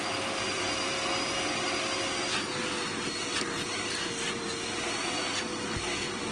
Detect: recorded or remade recorded